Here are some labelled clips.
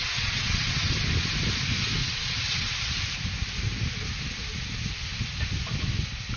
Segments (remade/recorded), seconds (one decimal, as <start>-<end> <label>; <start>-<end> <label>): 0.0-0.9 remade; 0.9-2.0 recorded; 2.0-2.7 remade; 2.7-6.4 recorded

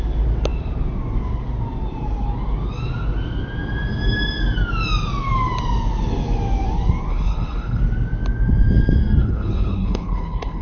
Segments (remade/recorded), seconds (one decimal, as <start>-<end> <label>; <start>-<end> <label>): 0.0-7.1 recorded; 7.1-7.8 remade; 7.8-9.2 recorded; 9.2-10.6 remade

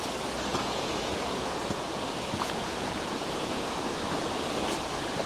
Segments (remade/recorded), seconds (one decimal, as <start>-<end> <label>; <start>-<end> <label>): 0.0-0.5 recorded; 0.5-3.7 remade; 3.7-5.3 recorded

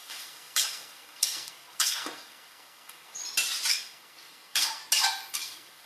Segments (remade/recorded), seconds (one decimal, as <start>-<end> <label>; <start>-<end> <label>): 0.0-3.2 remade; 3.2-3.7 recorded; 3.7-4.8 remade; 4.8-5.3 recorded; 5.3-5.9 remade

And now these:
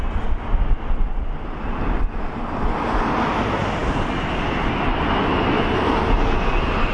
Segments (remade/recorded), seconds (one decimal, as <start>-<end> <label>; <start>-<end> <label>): 0.0-6.9 recorded